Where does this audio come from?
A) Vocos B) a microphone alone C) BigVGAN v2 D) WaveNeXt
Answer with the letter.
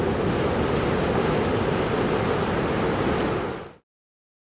B